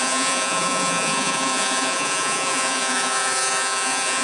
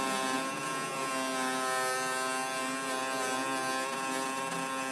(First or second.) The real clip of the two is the second